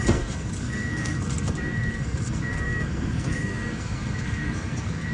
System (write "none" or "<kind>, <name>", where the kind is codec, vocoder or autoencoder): codec, SNAC